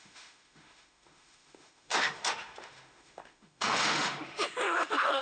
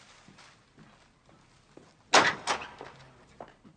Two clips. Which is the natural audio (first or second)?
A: second